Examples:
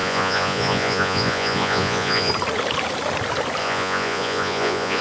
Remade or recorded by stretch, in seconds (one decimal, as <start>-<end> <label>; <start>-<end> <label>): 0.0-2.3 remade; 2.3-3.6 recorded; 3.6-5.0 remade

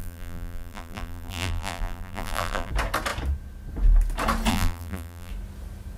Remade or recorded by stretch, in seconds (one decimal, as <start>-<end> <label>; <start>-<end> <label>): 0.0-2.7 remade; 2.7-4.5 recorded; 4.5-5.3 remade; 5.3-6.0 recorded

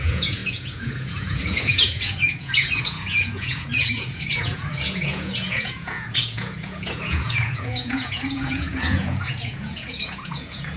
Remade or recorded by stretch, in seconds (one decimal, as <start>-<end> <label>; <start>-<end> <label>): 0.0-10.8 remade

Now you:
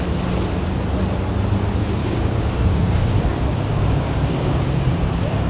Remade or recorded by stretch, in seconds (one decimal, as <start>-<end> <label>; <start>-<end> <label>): 0.0-2.0 recorded; 2.0-3.2 remade; 3.2-3.7 recorded; 3.7-4.9 remade; 4.9-5.5 recorded

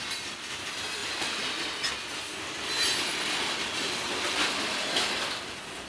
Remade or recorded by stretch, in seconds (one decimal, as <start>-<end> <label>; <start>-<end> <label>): 0.0-5.9 recorded

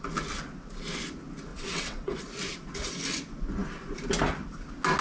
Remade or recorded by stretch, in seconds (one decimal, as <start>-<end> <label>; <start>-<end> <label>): 0.0-1.5 recorded; 1.5-2.2 remade; 2.2-5.0 recorded

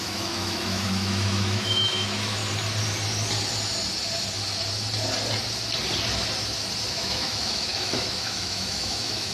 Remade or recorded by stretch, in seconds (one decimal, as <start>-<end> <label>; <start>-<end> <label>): 0.0-2.4 remade; 2.4-6.9 recorded; 6.9-9.3 remade